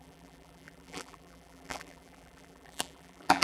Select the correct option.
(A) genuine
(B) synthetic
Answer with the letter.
B